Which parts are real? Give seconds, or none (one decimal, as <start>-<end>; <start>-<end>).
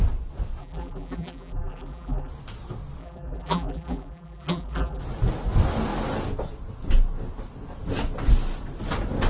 0.0-0.6; 2.3-3.0; 5.0-9.3